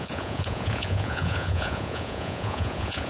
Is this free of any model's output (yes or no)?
no